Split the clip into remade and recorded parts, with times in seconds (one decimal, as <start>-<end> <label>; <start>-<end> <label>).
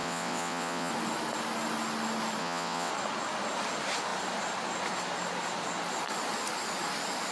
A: 0.0-0.9 remade; 0.9-2.4 recorded; 2.4-2.9 remade; 2.9-7.3 recorded